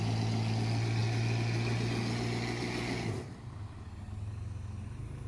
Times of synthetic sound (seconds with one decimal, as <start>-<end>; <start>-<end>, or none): none